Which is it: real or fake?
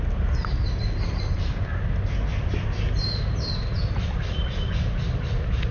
real